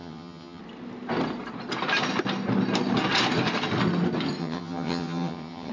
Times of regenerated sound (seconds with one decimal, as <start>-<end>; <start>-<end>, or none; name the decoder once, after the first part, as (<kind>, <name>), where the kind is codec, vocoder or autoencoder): 0.0-0.6 (vocoder, HiFi-GAN); 4.4-5.7